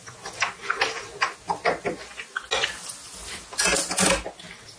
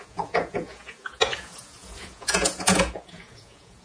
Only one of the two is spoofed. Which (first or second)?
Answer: second